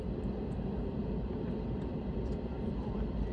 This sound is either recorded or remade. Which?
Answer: remade